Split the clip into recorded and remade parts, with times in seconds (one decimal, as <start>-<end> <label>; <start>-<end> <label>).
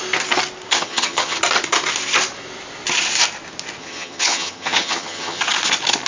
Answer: 0.0-0.7 recorded; 0.7-1.4 remade; 1.4-3.8 recorded; 3.8-5.4 remade; 5.4-6.1 recorded